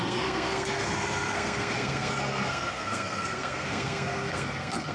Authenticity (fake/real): fake